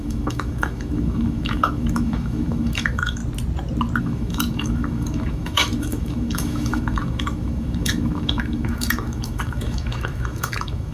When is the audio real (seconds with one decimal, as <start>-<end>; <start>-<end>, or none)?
3.2-4.0